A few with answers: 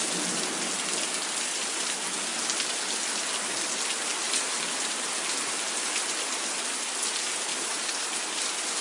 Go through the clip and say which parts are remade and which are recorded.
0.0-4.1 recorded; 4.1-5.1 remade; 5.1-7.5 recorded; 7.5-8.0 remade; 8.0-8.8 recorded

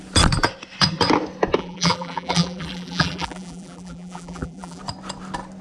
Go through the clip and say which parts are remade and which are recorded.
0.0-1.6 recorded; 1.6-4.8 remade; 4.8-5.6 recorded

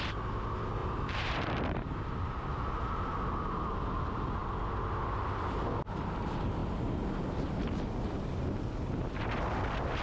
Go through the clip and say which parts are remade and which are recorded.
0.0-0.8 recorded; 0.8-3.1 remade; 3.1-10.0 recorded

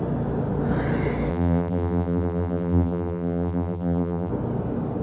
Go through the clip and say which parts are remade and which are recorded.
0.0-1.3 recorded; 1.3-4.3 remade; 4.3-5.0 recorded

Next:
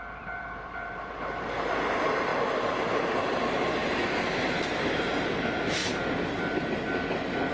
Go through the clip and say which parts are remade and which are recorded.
0.0-2.3 remade; 2.3-3.1 recorded; 3.1-5.8 remade; 5.8-7.5 recorded

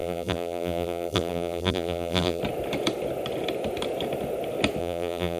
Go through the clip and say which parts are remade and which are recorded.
0.0-2.4 remade; 2.4-4.8 recorded; 4.8-5.4 remade